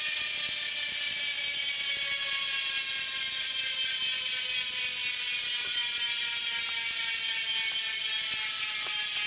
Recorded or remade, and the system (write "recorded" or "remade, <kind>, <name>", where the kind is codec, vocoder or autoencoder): recorded